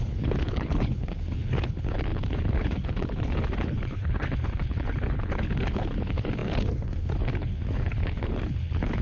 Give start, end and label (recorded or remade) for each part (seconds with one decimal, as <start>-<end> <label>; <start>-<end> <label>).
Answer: 0.0-9.0 remade